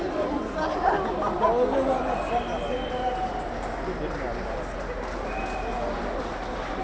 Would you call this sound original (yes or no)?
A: yes